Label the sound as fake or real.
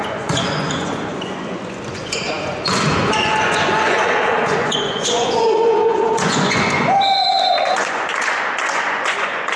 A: fake